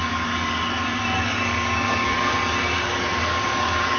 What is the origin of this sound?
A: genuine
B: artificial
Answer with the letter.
B